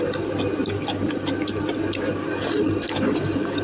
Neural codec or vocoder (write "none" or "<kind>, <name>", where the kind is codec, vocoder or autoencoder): none